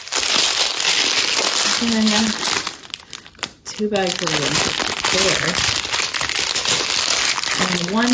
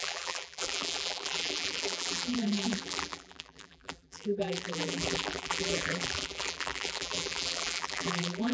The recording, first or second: first